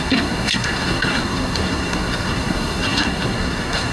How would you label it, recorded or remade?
remade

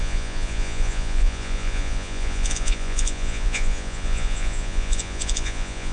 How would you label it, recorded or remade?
remade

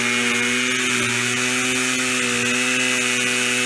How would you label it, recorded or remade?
recorded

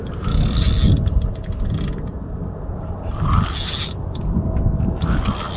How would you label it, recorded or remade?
recorded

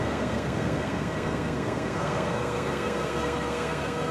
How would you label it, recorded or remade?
remade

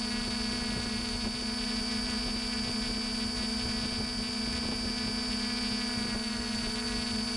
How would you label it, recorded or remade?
recorded